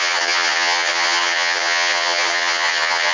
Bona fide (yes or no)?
no